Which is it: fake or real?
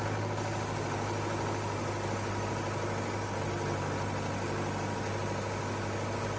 real